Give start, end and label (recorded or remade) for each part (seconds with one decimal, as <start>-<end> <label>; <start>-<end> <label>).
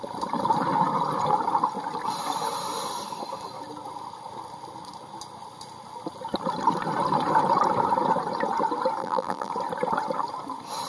0.0-9.0 recorded; 9.0-9.5 remade; 9.5-10.9 recorded